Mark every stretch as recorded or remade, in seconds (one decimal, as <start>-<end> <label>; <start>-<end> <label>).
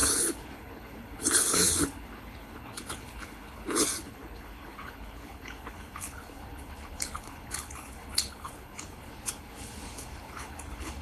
0.0-11.0 remade